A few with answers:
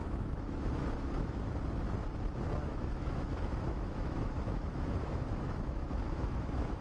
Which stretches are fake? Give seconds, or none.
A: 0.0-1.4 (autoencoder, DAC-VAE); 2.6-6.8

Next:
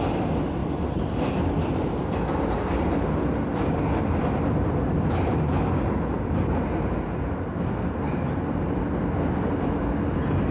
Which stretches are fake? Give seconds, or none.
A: none

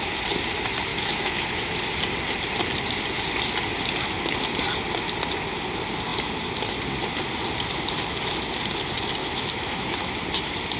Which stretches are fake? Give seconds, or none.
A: 0.9-1.7 (autoencoder, DAC-VAE); 9.2-10.2

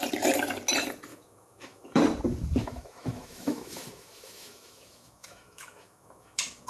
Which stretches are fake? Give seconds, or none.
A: 1.1-2.0 (autoencoder, DAC-VAE); 2.6-6.7

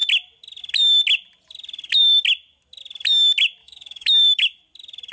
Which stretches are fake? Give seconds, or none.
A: 3.6-4.6 (autoencoder, DAC-VAE)

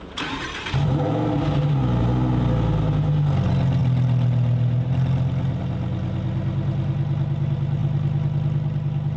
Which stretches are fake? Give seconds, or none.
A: none